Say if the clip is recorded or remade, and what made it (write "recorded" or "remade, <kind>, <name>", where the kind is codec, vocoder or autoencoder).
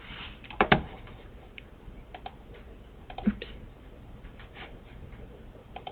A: remade, vocoder, BigVGAN v2